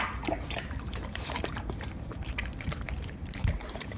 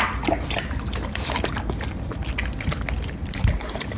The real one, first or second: second